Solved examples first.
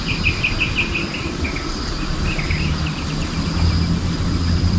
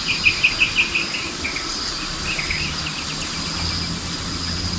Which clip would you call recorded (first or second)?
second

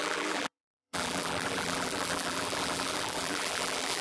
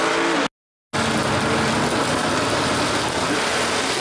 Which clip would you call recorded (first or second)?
second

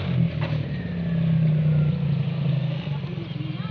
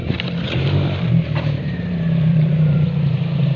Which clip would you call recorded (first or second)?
first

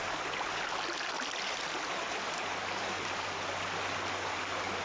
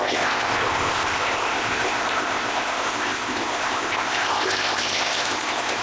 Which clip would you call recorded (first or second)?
first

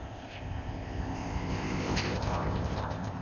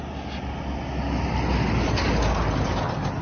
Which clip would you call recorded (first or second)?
second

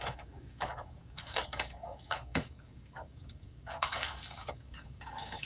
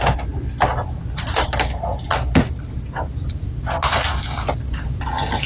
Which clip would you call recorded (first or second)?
second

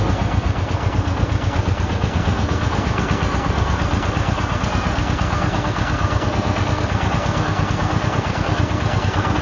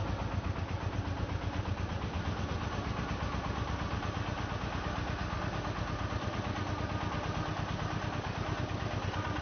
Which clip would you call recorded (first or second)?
second